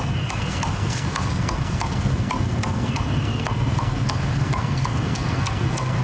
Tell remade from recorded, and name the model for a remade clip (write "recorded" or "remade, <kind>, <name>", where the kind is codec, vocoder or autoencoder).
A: remade, codec, SNAC